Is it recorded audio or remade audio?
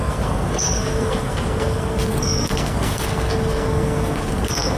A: remade